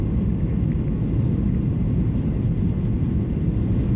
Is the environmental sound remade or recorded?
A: recorded